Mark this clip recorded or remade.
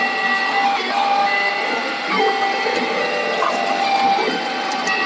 recorded